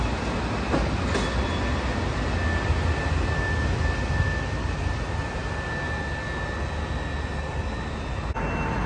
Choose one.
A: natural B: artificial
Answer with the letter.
A